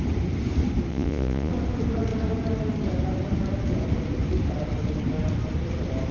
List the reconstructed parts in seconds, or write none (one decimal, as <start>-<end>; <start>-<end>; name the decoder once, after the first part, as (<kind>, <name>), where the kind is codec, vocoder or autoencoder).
0.9-1.5 (vocoder, Vocos)